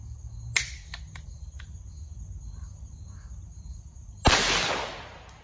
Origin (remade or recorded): recorded